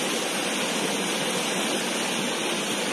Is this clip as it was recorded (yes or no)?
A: yes